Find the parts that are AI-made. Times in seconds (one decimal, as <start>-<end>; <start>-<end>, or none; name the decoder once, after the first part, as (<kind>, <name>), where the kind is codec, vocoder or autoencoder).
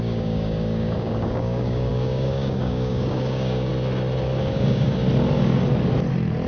0.0-3.7 (codec, DAC); 4.4-5.0